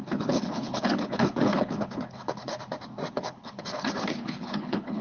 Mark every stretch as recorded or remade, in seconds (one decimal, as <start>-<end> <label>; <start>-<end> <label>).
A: 0.0-2.5 remade; 2.5-3.1 recorded; 3.1-5.0 remade